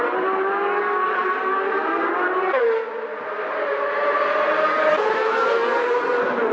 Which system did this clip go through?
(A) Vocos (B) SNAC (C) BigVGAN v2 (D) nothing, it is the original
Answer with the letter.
C